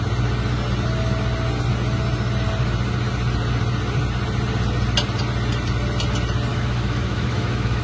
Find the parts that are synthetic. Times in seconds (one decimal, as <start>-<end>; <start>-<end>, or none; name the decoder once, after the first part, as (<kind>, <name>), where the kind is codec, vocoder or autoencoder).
6.5-7.8 (autoencoder, DAC-VAE)

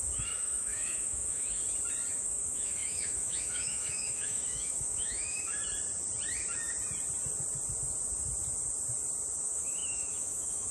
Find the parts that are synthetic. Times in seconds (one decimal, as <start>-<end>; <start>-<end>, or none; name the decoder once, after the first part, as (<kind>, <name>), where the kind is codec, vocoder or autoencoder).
0.0-1.6 (autoencoder, DAC-VAE); 2.2-5.6; 9.4-10.7

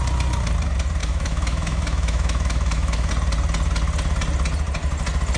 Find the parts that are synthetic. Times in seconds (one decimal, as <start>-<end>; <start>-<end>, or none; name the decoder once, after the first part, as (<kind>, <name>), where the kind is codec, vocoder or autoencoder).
1.0-3.1 (autoencoder, DAC-VAE)

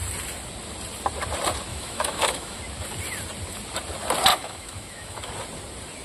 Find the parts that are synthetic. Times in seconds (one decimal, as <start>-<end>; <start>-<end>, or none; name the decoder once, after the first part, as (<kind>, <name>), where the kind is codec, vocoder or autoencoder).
1.7-2.6 (autoencoder, DAC-VAE); 4.3-5.3

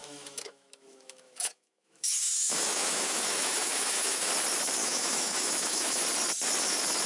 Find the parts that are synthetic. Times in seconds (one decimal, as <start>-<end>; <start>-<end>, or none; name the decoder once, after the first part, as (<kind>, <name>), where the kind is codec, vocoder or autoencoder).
0.0-4.3 (autoencoder, DAC-VAE); 4.8-6.0